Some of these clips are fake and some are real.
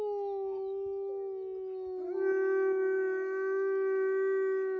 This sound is real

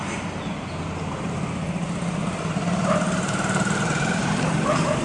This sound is real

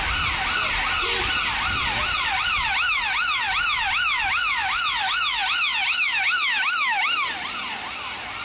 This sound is real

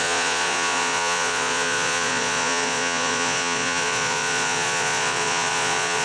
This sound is fake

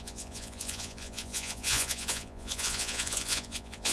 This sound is fake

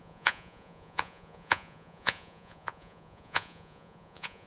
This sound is fake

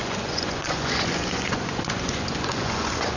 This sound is fake